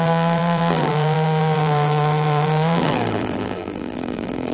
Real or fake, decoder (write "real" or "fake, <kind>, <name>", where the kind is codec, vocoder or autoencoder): fake, vocoder, BigVGAN v2